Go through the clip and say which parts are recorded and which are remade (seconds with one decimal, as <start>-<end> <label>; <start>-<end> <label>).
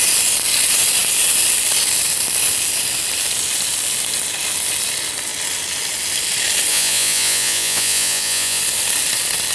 0.0-6.7 recorded; 6.7-8.6 remade; 8.6-9.5 recorded